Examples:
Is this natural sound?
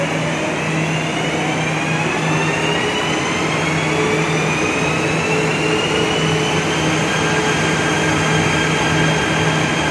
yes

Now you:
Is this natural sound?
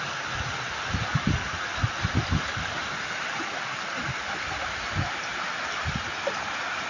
yes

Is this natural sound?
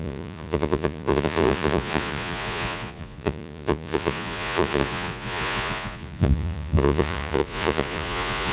no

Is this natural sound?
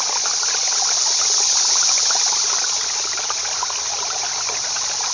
yes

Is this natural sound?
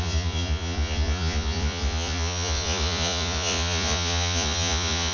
no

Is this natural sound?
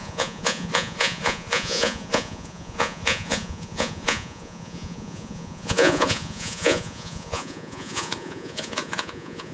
no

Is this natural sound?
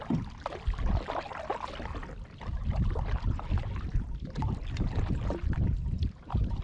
yes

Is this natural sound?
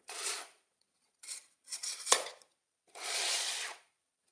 no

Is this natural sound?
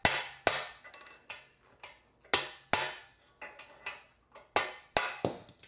yes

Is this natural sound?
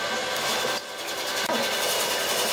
yes